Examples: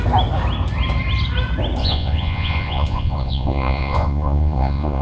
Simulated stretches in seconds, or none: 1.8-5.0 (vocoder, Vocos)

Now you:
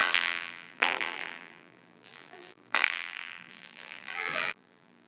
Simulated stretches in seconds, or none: 0.0-5.1 (vocoder, BigVGAN v2)

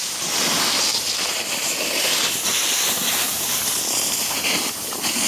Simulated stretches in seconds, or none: none

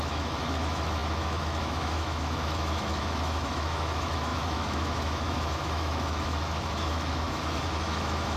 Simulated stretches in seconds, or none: 0.0-8.4 (autoencoder, DAC-VAE)

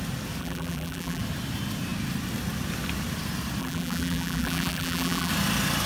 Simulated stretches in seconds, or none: 0.4-1.2 (vocoder, BigVGAN v2); 3.6-5.3

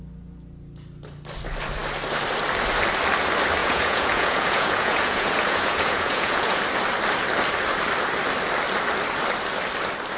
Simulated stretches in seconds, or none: 3.6-6.6 (vocoder, Vocos)

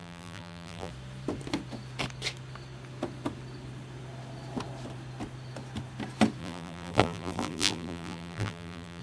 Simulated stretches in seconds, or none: 0.0-0.9 (vocoder, BigVGAN v2); 6.4-9.0

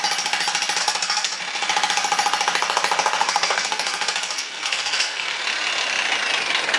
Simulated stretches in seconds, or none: 0.8-1.4 (codec, SNAC); 3.2-5.4